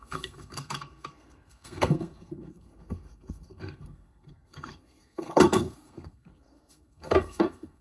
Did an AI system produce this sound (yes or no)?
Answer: yes